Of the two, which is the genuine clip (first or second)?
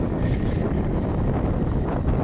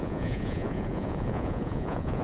first